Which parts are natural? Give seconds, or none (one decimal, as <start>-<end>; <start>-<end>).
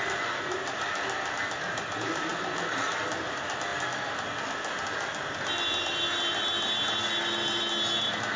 0.0-2.3; 2.9-3.7; 7.6-8.4